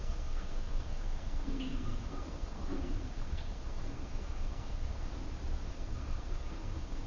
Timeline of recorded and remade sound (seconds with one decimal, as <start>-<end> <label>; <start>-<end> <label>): 0.0-5.1 remade; 5.1-5.7 recorded; 5.7-7.1 remade